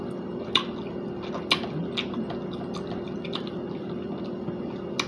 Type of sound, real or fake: real